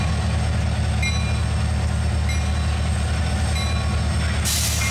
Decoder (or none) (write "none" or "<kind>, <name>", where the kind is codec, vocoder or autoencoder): none